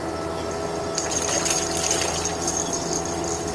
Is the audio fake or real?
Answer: real